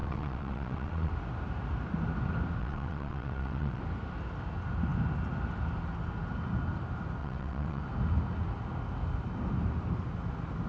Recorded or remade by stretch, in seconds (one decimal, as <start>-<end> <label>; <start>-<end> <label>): 0.0-1.1 remade; 1.1-2.6 recorded; 2.6-3.8 remade; 3.8-7.2 recorded; 7.2-7.8 remade; 7.8-10.7 recorded